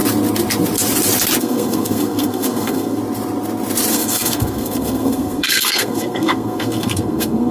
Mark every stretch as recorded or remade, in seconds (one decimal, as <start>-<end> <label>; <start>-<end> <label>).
0.0-1.4 recorded; 1.4-3.0 remade; 3.0-3.9 recorded; 3.9-7.5 remade